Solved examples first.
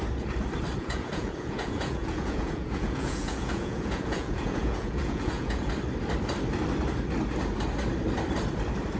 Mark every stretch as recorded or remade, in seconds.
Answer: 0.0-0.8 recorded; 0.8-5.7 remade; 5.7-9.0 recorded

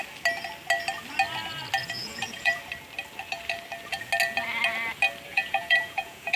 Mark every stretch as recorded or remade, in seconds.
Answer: 0.0-1.8 recorded; 1.8-2.6 remade; 2.6-5.3 recorded; 5.3-6.4 remade

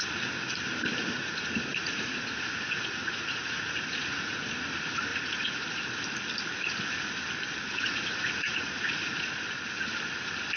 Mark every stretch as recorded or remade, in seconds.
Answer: 0.0-1.0 recorded; 1.0-4.4 remade; 4.4-5.1 recorded; 5.1-5.8 remade; 5.8-7.7 recorded; 7.7-9.4 remade; 9.4-10.6 recorded

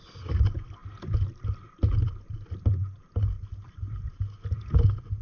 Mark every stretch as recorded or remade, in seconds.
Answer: 0.0-5.2 recorded

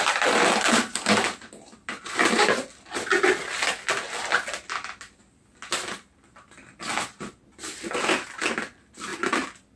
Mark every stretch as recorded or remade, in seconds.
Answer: 0.0-9.8 recorded

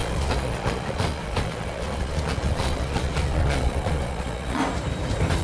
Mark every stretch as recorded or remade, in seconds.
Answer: 0.0-4.6 remade; 4.6-5.4 recorded

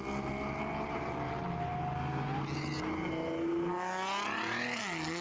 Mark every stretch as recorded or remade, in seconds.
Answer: 0.0-5.2 recorded

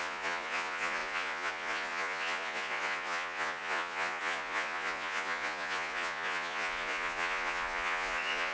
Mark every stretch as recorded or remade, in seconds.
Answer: 0.0-8.5 remade